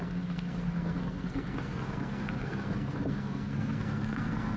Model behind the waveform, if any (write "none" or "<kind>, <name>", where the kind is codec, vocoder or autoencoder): codec, SNAC